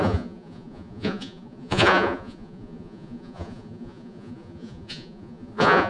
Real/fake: fake